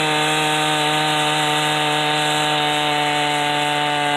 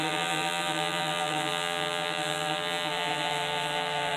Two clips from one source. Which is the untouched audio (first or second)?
first